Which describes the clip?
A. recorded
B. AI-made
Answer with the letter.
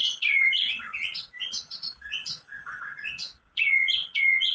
B